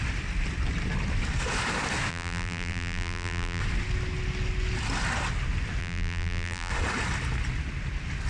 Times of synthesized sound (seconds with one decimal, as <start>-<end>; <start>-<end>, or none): 2.1-3.6; 5.8-6.7